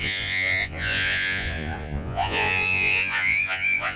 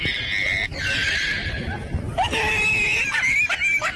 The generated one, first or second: first